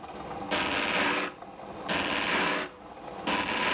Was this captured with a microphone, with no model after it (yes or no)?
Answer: yes